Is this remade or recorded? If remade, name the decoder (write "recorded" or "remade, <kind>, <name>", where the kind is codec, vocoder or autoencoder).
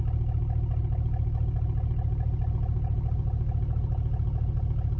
recorded